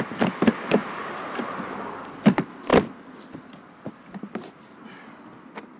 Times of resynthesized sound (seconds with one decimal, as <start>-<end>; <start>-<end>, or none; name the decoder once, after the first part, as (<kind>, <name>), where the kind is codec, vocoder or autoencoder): 0.8-1.5 (vocoder, BigVGAN v2)